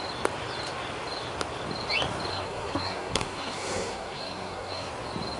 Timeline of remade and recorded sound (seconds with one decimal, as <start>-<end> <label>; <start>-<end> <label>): 0.0-2.3 recorded; 2.3-4.9 remade; 4.9-5.4 recorded